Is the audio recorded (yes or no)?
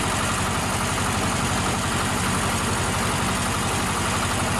yes